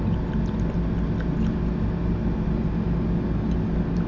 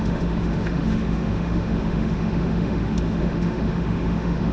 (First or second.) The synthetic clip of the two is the second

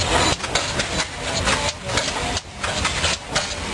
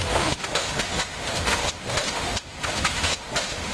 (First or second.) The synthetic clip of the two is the second